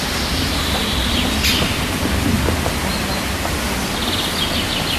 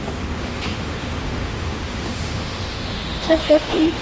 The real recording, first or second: first